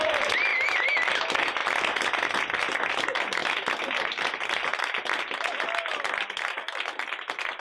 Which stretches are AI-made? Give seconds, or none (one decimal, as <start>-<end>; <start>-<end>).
0.5-1.1